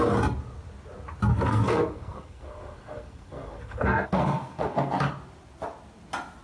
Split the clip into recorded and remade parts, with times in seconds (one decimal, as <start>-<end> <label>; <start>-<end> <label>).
0.0-1.3 recorded; 1.3-5.1 remade; 5.1-6.4 recorded